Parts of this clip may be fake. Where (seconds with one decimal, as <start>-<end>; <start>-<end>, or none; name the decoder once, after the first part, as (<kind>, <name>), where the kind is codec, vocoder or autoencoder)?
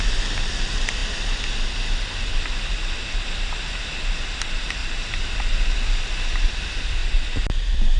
4.8-5.3 (vocoder, BigVGAN v2); 7.0-8.0